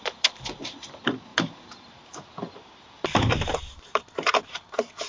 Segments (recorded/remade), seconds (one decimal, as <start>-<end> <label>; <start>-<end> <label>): 0.0-1.3 recorded; 1.3-4.4 remade; 4.4-5.1 recorded

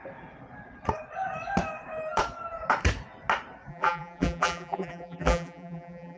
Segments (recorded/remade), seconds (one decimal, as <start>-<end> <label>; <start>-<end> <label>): 0.0-3.7 recorded; 3.7-6.2 remade

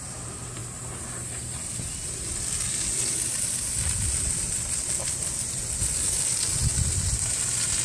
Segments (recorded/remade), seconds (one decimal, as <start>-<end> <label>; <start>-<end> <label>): 0.0-0.6 recorded; 0.6-4.5 remade; 4.5-6.7 recorded; 6.7-7.3 remade; 7.3-7.8 recorded

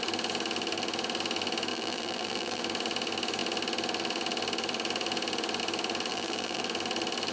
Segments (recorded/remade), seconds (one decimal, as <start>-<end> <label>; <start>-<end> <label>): 0.0-1.7 recorded; 1.7-2.6 remade; 2.6-6.1 recorded; 6.1-6.6 remade; 6.6-7.3 recorded